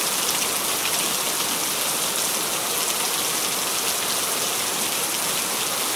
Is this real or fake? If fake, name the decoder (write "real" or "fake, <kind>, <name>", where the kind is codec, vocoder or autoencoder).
real